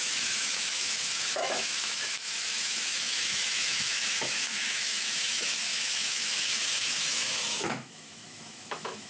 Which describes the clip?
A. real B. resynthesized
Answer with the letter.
B